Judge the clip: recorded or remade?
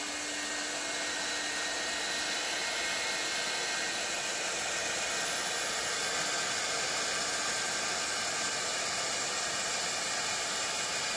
recorded